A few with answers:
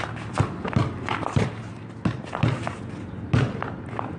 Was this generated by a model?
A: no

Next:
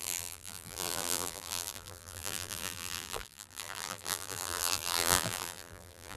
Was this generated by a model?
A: yes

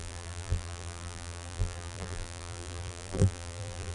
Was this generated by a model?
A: yes